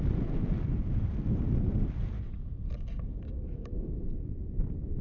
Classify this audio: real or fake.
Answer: real